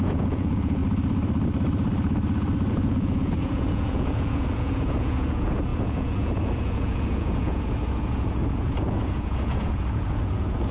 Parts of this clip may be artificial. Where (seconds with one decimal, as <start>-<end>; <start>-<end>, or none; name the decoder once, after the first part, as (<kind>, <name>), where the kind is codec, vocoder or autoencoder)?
0.0-0.8 (vocoder, Vocos); 2.7-10.7